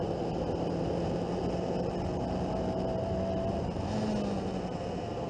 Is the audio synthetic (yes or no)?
no